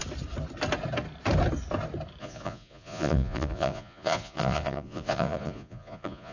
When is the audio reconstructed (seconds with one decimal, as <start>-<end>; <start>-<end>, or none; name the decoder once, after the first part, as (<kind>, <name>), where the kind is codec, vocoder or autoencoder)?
2.2-6.3 (vocoder, Vocos)